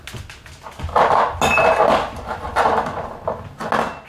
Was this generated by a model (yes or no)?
no